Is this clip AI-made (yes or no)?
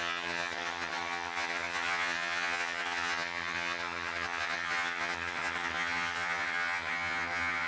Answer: yes